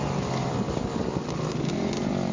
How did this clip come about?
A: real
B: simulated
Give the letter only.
A